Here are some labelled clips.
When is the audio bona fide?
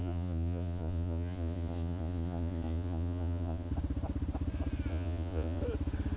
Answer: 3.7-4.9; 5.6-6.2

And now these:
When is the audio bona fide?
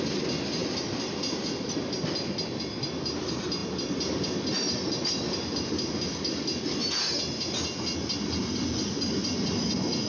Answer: 0.0-10.1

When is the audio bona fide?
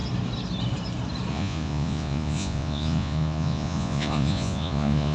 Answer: 0.0-1.3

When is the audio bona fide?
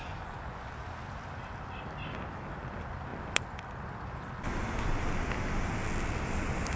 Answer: 0.7-6.8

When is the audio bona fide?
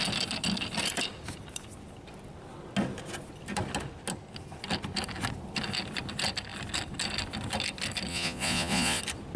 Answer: 0.0-8.1; 9.0-9.4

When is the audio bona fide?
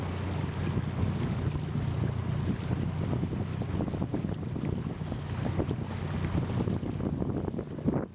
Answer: 0.0-8.1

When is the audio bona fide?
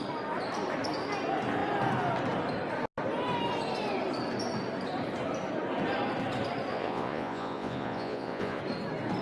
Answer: 0.0-6.7; 8.6-9.2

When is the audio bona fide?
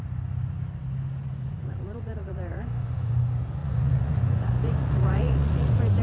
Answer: 0.0-1.2; 3.2-3.6